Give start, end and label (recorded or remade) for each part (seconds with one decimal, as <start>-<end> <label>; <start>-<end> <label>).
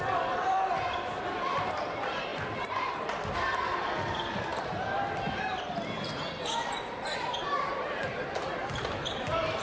0.0-4.5 remade; 4.5-6.7 recorded; 6.7-9.6 remade